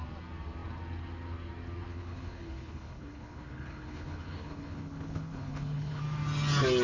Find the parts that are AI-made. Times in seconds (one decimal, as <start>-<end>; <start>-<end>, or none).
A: 1.9-6.0